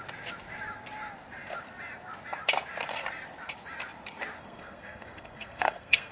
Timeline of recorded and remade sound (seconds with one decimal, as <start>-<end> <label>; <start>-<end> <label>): 0.0-4.4 recorded; 4.4-6.1 remade

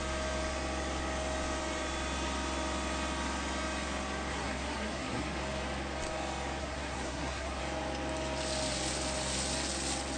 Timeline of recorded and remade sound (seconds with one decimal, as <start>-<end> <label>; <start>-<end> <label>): 0.0-4.3 recorded; 4.3-5.4 remade; 5.4-6.6 recorded; 6.6-7.6 remade; 7.6-10.2 recorded

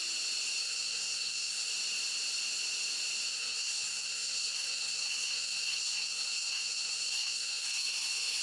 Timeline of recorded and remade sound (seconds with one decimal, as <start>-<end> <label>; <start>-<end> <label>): 0.0-0.6 recorded; 0.6-1.7 remade; 1.7-3.3 recorded; 3.3-8.4 remade

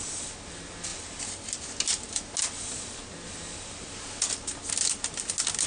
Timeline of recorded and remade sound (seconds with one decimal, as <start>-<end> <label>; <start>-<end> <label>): 0.0-5.7 recorded